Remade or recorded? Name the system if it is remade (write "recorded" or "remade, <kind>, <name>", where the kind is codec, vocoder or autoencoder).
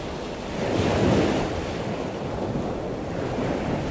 recorded